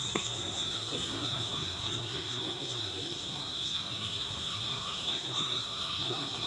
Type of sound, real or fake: fake